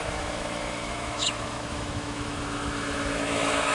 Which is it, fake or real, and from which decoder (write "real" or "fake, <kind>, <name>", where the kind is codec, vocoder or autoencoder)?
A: fake, autoencoder, DAC-VAE